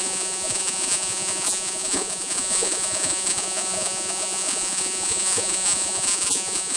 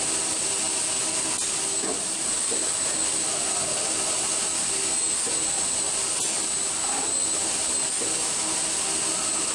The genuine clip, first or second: second